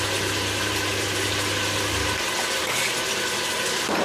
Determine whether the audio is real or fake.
real